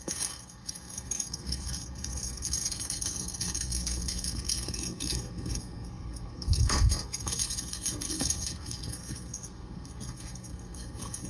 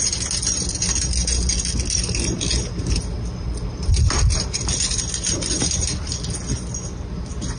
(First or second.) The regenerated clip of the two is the first